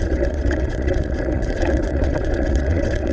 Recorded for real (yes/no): no